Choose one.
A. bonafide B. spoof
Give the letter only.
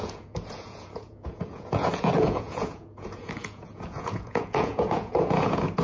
B